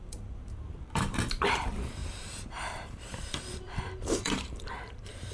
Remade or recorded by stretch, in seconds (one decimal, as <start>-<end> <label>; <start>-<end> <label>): 0.0-5.3 remade